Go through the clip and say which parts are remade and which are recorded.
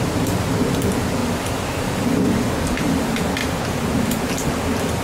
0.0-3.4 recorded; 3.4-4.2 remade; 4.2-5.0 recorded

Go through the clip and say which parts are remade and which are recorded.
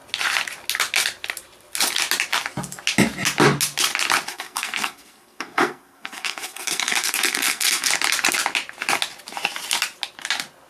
0.0-4.3 recorded; 4.3-7.9 remade; 7.9-10.7 recorded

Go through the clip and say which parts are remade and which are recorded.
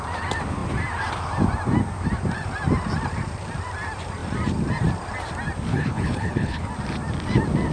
0.0-5.7 recorded; 5.7-6.7 remade; 6.7-7.7 recorded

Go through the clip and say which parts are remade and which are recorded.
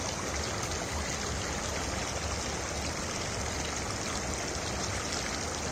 0.0-5.7 recorded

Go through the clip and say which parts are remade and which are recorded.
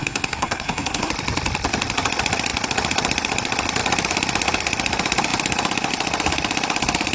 0.0-1.1 remade; 1.1-7.1 recorded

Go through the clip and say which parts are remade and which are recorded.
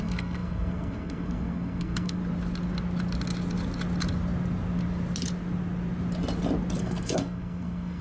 0.0-2.2 remade; 2.2-6.8 recorded; 6.8-8.0 remade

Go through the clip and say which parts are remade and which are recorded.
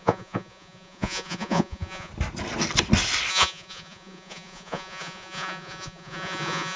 0.0-2.1 remade; 2.1-3.3 recorded; 3.3-6.8 remade